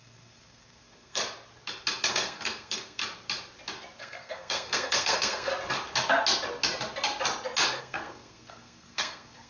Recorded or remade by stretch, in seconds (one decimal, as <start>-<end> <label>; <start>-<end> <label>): 0.0-1.2 remade; 1.2-2.1 recorded; 2.1-3.0 remade; 3.0-4.0 recorded; 4.0-5.5 remade; 5.5-7.8 recorded; 7.8-9.5 remade